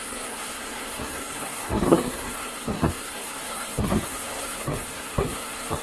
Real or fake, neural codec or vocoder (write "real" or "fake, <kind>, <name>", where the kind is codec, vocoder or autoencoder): fake, codec, SNAC